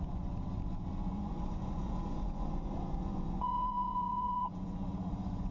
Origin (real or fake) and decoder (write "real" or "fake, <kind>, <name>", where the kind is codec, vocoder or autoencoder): fake, vocoder, Vocos